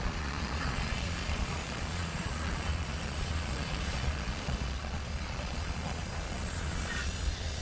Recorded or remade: remade